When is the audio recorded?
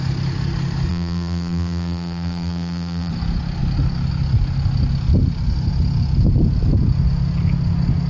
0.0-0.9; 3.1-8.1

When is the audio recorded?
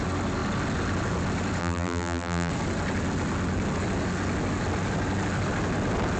0.0-1.6; 2.5-6.2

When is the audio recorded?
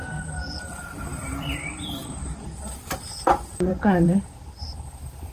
none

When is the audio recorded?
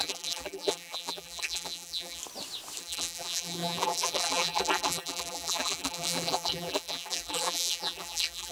2.2-2.8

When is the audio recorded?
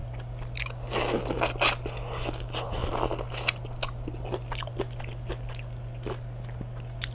0.0-7.1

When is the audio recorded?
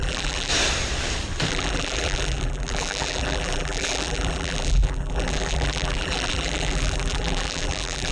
0.5-1.5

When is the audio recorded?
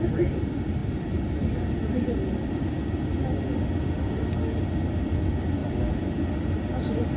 0.0-5.6; 6.1-7.2